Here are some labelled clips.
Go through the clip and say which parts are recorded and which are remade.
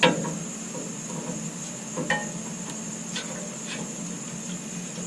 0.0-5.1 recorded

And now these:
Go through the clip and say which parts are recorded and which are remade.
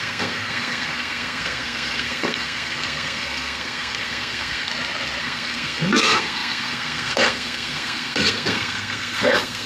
0.0-4.7 remade; 4.7-5.2 recorded; 5.2-9.7 remade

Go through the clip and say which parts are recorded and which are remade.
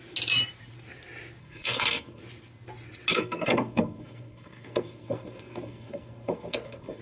0.0-1.4 recorded; 1.4-2.2 remade; 2.2-3.1 recorded; 3.1-7.0 remade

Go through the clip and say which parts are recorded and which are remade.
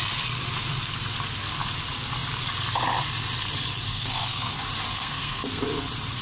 0.0-3.9 recorded; 3.9-4.5 remade; 4.5-4.9 recorded; 4.9-5.6 remade; 5.6-6.2 recorded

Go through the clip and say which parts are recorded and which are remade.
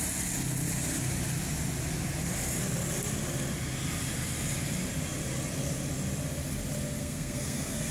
0.0-7.0 recorded; 7.0-7.9 remade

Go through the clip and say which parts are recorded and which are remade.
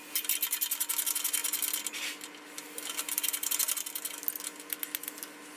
0.0-5.6 recorded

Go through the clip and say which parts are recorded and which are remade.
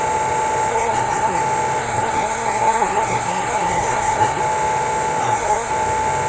0.0-0.7 recorded; 0.7-1.4 remade; 1.4-1.8 recorded; 1.8-4.4 remade; 4.4-5.2 recorded; 5.2-5.7 remade; 5.7-6.3 recorded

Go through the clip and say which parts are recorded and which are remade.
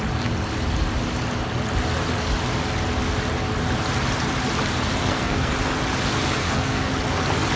0.0-5.0 recorded; 5.0-5.5 remade; 5.5-6.4 recorded; 6.4-6.9 remade; 6.9-7.6 recorded